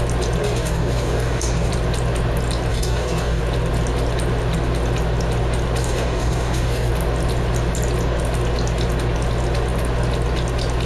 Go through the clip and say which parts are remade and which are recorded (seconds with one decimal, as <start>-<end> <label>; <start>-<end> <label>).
0.0-0.4 recorded; 0.4-1.7 remade; 1.7-2.7 recorded; 2.7-3.4 remade; 3.4-5.8 recorded; 5.8-6.9 remade; 6.9-10.9 recorded